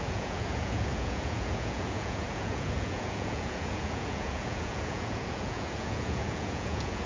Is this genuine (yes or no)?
no